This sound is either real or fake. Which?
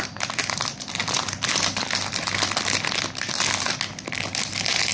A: real